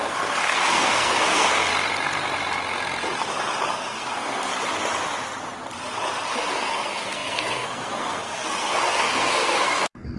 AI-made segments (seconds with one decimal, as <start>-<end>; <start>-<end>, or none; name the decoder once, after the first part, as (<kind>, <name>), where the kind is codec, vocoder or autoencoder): 0.0-1.7 (codec, SNAC); 3.6-4.5; 6.3-10.2